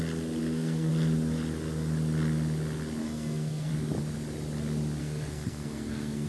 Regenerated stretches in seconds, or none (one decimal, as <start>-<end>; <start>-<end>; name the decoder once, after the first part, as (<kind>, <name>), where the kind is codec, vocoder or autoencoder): 0.4-0.9 (codec, SNAC); 3.0-3.7; 5.0-6.3